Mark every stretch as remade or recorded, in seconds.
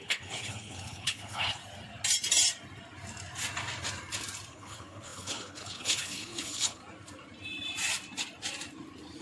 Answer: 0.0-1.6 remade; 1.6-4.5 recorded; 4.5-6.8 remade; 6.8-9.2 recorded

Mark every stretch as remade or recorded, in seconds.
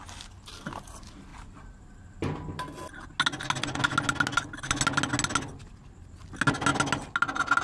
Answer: 0.0-7.6 recorded